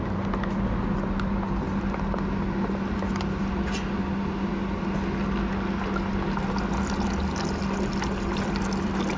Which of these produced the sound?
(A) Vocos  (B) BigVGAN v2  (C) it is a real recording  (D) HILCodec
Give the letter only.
C